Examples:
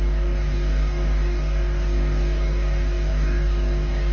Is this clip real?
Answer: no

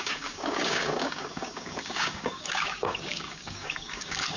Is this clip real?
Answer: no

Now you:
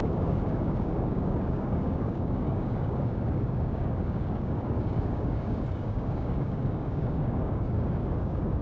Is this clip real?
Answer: no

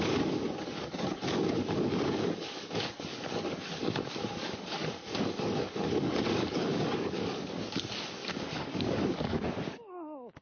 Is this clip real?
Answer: no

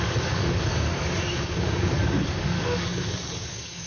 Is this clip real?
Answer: no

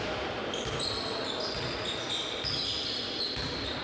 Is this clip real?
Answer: yes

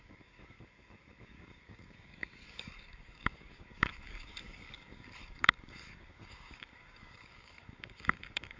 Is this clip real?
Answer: no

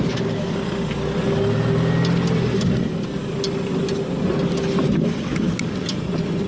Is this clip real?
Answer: yes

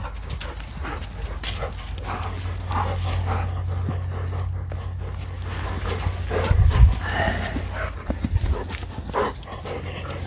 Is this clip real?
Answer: yes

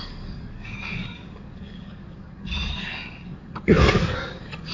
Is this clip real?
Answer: no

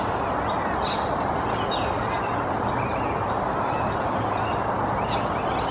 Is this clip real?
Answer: yes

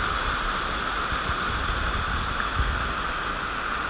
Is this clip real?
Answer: yes